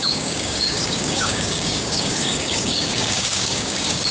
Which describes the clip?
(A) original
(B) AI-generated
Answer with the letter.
B